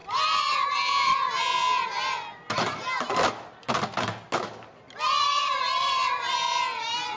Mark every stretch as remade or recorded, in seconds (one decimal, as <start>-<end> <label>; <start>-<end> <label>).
0.0-5.4 recorded; 5.4-6.3 remade; 6.3-7.2 recorded